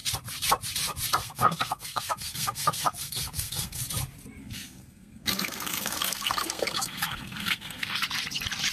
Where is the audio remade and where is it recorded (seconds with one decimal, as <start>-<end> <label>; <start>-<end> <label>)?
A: 0.0-1.2 recorded; 1.2-3.8 remade; 3.8-4.4 recorded; 4.4-8.0 remade; 8.0-8.7 recorded